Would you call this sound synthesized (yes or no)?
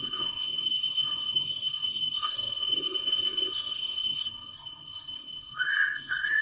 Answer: yes